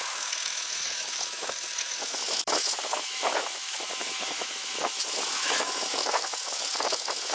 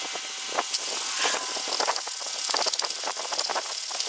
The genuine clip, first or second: second